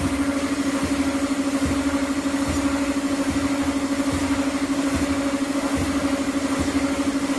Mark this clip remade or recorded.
recorded